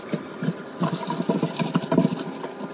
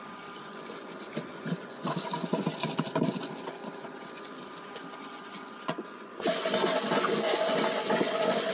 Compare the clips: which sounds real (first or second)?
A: first